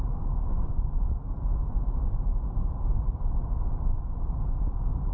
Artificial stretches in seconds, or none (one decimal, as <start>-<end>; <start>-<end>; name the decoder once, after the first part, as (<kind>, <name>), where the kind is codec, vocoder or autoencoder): 0.5-1.1 (vocoder, Vocos)